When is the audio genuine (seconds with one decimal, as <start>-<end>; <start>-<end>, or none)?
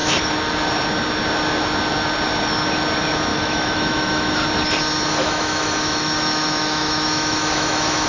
0.0-3.3; 4.3-5.2